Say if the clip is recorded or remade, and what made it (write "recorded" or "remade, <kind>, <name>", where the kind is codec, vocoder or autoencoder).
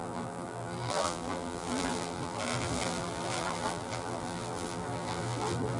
remade, vocoder, BigVGAN v2